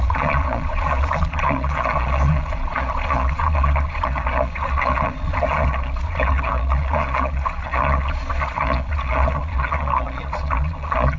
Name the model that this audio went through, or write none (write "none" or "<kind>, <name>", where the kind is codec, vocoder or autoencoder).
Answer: vocoder, Vocos